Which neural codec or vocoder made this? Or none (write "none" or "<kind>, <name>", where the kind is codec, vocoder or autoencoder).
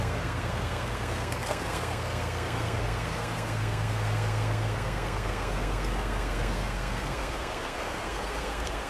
codec, SNAC